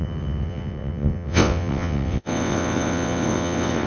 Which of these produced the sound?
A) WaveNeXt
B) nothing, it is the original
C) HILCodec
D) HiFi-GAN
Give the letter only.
A